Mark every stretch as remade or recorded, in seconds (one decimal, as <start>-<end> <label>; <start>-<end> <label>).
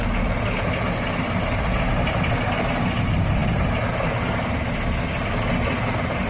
0.0-6.3 recorded